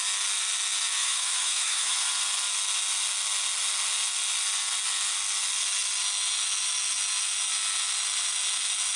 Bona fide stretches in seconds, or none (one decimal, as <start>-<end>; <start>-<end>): 0.0-1.0; 2.1-9.0